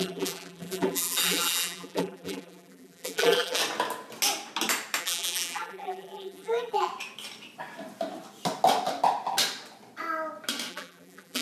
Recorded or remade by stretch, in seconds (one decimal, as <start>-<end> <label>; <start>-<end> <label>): 0.0-3.6 remade; 3.6-5.0 recorded; 5.0-6.9 remade; 6.9-10.7 recorded; 10.7-11.4 remade

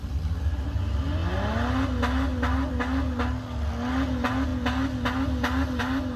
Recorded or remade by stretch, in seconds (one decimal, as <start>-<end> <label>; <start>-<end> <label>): 0.0-6.2 recorded

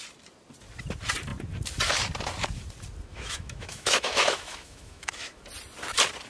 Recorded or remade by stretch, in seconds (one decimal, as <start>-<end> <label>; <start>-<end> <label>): 0.0-3.1 recorded; 3.1-5.4 remade; 5.4-6.3 recorded